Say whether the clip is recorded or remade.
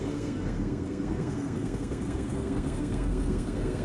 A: remade